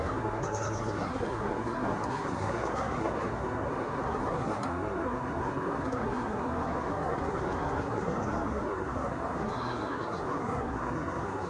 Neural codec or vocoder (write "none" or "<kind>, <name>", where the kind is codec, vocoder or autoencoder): codec, SNAC